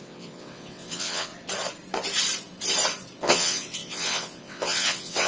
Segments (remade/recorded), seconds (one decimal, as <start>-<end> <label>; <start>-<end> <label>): 0.0-1.3 remade; 1.3-3.2 recorded; 3.2-5.3 remade